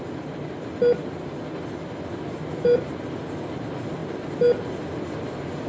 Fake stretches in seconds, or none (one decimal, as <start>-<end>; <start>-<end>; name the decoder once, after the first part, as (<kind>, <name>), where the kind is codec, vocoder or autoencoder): none